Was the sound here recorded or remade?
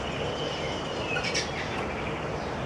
recorded